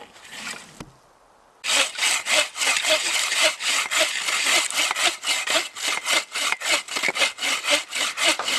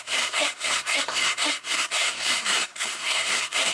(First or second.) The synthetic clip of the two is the second